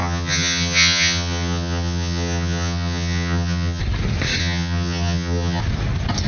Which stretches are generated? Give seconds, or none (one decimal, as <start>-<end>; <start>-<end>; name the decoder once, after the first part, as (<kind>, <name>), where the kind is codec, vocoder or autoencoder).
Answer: 0.0-3.8 (vocoder, HiFi-GAN); 4.4-5.6